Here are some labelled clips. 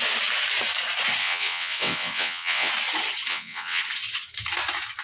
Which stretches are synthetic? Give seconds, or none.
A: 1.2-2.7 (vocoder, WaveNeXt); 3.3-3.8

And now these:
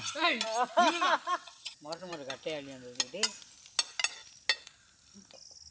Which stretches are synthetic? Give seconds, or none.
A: 1.3-2.1 (vocoder, WaveNeXt)

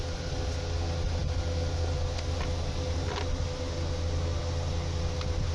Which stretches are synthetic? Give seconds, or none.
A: none

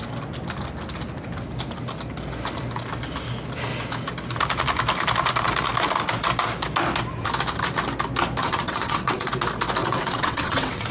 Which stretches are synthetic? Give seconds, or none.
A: 8.4-9.3 (vocoder, WaveNeXt); 9.8-10.9

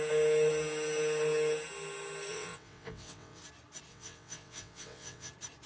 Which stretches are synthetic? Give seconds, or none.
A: 2.3-3.4 (vocoder, WaveNeXt); 3.9-5.3

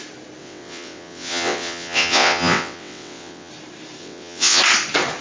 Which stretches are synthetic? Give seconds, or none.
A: 0.4-3.5 (vocoder, WaveNeXt); 4.0-4.6

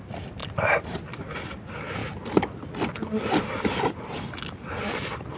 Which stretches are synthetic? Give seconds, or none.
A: none

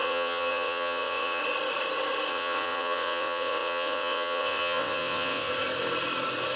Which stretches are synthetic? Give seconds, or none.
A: 0.0-1.4 (vocoder, WaveNeXt); 2.3-5.5